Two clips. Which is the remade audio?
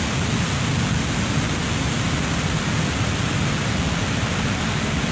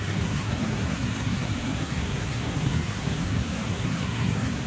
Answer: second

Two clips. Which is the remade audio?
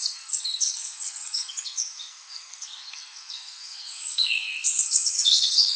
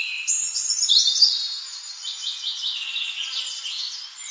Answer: first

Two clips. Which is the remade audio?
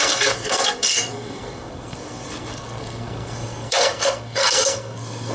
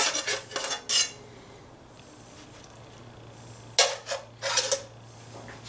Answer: first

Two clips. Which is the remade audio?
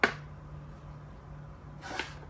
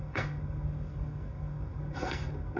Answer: second